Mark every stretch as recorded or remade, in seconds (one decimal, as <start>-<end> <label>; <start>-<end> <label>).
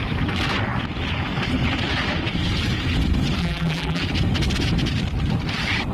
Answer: 0.0-3.4 recorded; 3.4-4.0 remade; 4.0-5.9 recorded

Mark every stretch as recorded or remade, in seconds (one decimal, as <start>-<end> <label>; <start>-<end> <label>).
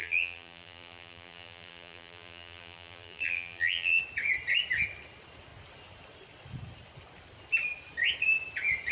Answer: 0.0-4.0 remade; 4.0-8.9 recorded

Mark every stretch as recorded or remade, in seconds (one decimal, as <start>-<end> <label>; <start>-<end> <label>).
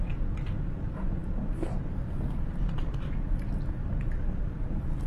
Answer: 0.0-5.1 recorded